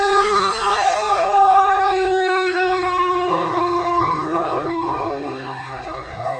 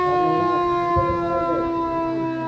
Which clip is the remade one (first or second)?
first